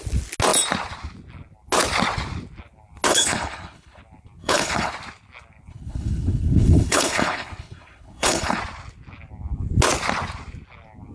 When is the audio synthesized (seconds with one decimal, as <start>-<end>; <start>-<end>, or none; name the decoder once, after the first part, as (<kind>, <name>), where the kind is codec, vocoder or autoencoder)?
3.1-4.0 (codec, HILCodec); 4.4-4.9; 5.7-8.6